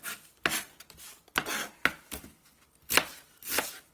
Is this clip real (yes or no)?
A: yes